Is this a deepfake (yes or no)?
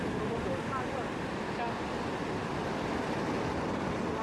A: no